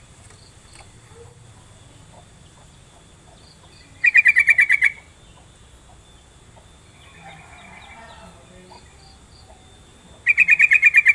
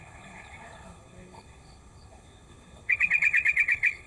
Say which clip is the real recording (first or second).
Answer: first